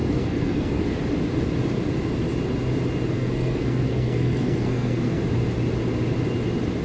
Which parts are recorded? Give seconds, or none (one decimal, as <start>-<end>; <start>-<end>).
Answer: 0.8-3.1; 5.2-6.8